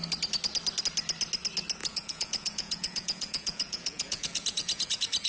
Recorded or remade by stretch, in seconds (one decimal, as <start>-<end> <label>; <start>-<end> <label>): 0.0-1.8 recorded; 1.8-5.3 remade

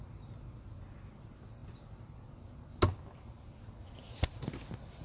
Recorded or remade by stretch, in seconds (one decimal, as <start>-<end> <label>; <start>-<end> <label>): 0.0-5.0 recorded